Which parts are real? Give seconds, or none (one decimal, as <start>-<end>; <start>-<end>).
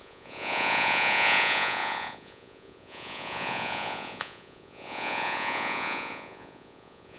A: none